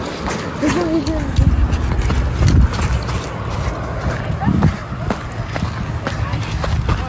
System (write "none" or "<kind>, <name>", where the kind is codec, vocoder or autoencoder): none